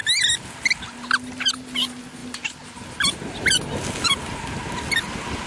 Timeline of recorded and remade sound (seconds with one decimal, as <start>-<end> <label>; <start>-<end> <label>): 0.0-5.5 recorded